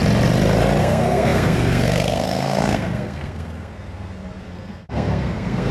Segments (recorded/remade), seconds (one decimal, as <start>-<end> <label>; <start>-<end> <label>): 0.0-0.8 recorded; 0.8-5.7 remade